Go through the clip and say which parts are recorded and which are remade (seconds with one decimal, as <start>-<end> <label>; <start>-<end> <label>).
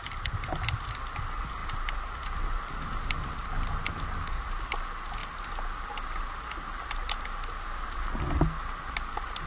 0.0-9.5 recorded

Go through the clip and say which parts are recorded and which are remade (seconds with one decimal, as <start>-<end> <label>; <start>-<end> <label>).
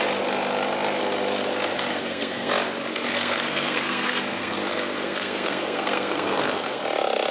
0.0-1.9 recorded; 1.9-2.5 remade; 2.5-2.9 recorded; 2.9-6.8 remade; 6.8-7.3 recorded